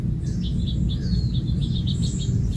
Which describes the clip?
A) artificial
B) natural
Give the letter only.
B